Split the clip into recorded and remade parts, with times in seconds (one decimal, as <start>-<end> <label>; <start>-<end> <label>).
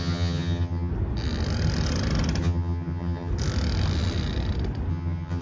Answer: 0.0-0.9 remade; 0.9-2.4 recorded; 2.4-3.3 remade; 3.3-4.9 recorded; 4.9-5.4 remade